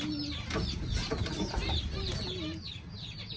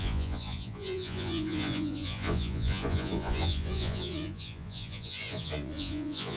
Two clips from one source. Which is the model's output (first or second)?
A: second